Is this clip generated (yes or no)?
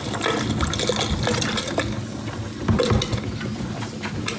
no